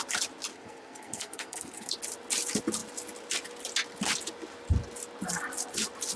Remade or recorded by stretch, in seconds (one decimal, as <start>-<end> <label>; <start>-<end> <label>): 0.0-0.5 recorded; 0.5-1.9 remade; 1.9-6.2 recorded